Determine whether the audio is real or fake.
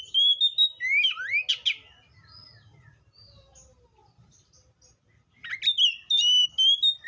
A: real